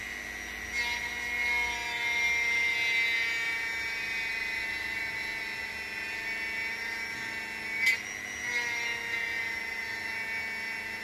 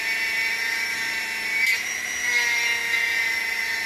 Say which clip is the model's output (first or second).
second